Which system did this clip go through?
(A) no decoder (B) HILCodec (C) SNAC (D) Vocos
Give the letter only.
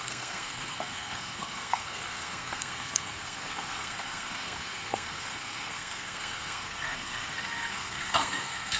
C